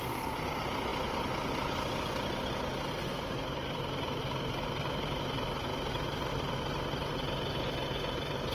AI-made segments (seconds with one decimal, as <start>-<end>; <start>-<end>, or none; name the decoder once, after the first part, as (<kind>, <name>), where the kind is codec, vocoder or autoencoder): none

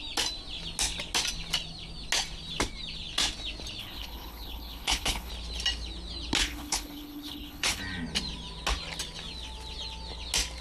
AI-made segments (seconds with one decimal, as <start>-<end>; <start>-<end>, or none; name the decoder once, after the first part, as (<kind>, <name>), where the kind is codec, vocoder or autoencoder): 3.8-5.3 (codec, HILCodec); 6.4-7.8

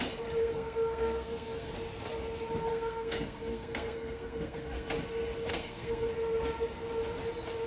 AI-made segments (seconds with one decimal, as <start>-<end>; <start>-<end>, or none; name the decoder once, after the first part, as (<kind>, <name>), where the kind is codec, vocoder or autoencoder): 0.4-1.7 (codec, SNAC); 2.7-4.9; 5.5-6.1

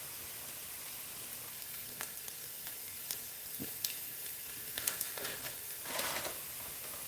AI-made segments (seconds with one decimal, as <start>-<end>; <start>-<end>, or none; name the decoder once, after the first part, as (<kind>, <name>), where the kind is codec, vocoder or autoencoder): 1.5-5.8 (codec, SNAC)